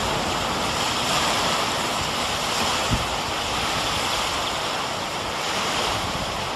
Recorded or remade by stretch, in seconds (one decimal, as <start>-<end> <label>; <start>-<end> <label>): 0.0-1.9 remade; 1.9-3.4 recorded; 3.4-6.6 remade